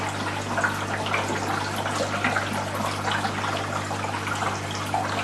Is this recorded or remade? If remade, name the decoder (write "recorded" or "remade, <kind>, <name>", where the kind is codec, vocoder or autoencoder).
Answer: recorded